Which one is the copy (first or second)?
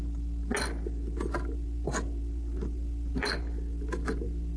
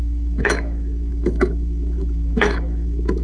second